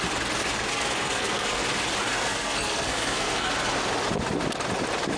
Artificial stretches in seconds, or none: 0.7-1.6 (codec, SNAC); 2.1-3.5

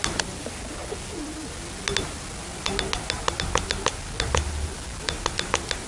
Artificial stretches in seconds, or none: none

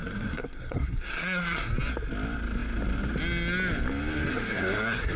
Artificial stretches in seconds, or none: 0.0-1.7 (codec, SNAC); 4.3-5.2